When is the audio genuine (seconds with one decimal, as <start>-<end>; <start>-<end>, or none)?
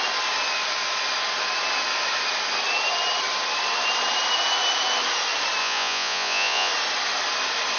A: 0.0-5.6; 6.7-7.8